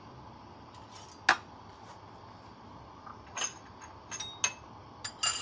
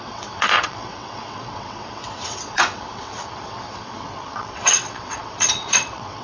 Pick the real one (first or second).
first